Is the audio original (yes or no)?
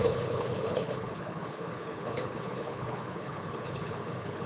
no